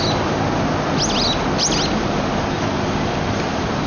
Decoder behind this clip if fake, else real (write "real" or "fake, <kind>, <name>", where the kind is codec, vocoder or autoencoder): real